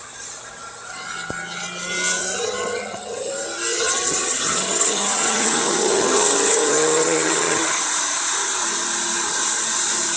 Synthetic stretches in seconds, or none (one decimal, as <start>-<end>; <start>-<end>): 2.2-3.3; 3.7-7.8